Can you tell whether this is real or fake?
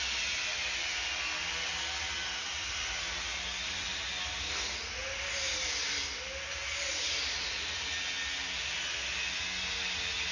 real